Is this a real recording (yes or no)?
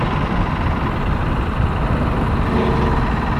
yes